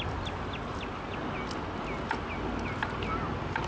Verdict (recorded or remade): recorded